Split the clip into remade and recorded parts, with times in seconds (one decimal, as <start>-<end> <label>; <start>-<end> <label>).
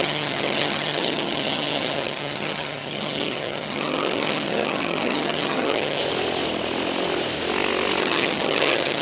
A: 0.0-6.0 remade; 6.0-8.0 recorded; 8.0-9.0 remade